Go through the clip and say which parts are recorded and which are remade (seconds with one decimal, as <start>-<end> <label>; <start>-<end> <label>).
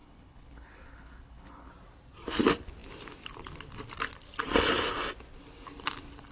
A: 0.0-1.7 remade; 1.7-6.3 recorded